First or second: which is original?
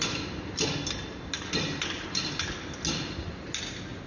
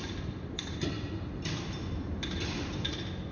first